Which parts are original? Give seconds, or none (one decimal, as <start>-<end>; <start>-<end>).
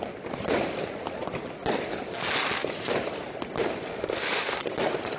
0.0-3.9; 4.6-5.2